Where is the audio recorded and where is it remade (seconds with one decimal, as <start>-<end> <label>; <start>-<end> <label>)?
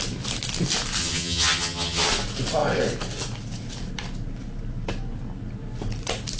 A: 0.0-1.0 recorded; 1.0-2.1 remade; 2.1-6.4 recorded